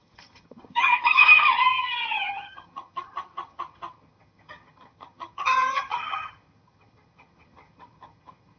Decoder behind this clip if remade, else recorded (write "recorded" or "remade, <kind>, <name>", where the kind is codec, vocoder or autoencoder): remade, vocoder, HiFi-GAN